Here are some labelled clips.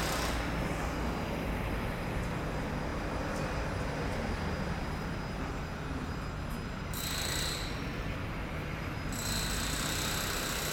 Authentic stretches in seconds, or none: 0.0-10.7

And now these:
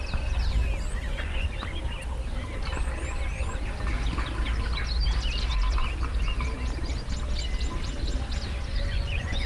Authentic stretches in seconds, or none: 0.0-0.9; 1.5-8.7

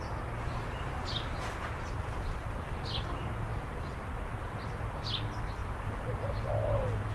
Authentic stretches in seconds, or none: 0.0-3.5; 4.3-5.6; 6.5-7.1